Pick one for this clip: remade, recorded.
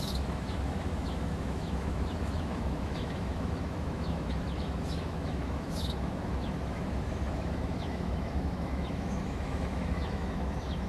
remade